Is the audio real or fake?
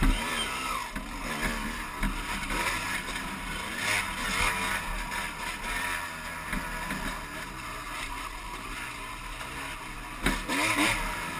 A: real